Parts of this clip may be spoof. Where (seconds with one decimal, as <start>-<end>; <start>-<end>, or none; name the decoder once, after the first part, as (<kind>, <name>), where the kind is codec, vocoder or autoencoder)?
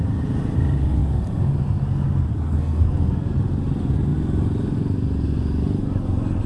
2.3-3.3 (codec, SNAC)